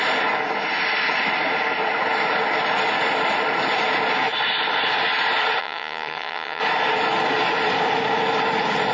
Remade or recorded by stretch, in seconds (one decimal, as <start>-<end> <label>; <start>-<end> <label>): 0.0-5.6 recorded; 5.6-6.6 remade; 6.6-8.9 recorded